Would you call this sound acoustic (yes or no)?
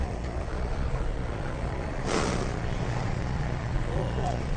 no